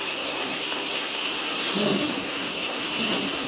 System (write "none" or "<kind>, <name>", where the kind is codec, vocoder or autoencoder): codec, SNAC